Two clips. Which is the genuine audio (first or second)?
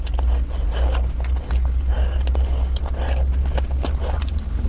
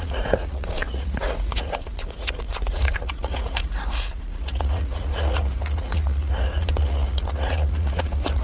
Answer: first